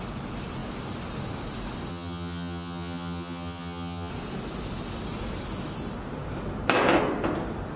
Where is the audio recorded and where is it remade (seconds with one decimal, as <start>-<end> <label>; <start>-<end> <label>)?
0.0-1.9 recorded; 1.9-4.1 remade; 4.1-7.8 recorded